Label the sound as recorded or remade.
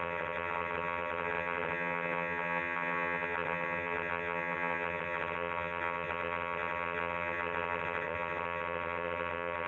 remade